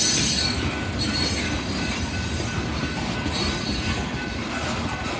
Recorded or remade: recorded